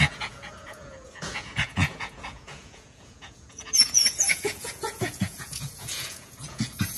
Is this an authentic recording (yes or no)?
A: no